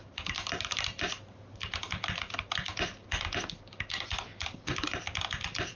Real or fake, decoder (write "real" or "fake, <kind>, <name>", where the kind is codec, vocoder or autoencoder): real